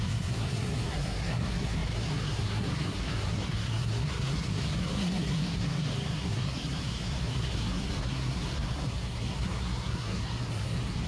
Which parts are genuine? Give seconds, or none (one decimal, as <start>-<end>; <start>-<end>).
none